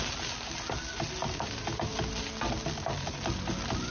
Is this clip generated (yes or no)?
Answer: no